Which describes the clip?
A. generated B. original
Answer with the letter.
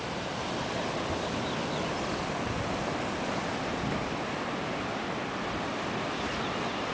B